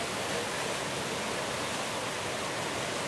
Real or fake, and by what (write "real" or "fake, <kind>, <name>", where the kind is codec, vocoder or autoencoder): real